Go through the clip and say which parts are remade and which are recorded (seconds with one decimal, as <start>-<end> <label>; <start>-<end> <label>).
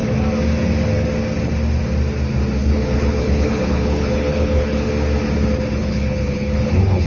0.0-2.6 recorded; 2.6-4.9 remade; 4.9-5.8 recorded; 5.8-7.1 remade